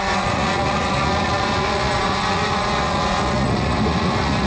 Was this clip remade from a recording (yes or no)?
yes